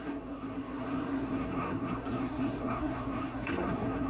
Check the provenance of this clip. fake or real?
fake